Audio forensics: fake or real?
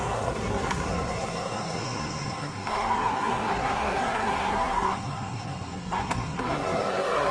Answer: fake